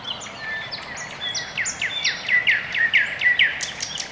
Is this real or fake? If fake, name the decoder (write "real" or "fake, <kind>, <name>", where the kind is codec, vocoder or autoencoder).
real